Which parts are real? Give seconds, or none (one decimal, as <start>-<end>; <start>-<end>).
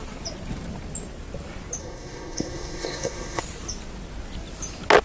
0.0-1.8; 3.4-5.0